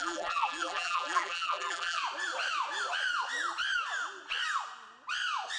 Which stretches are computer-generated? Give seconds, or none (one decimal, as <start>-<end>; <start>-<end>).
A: 0.0-2.0